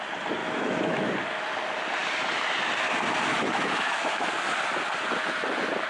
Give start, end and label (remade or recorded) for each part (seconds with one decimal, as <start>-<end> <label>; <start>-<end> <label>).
0.0-0.4 recorded; 0.4-1.1 remade; 1.1-3.3 recorded; 3.3-4.3 remade; 4.3-5.9 recorded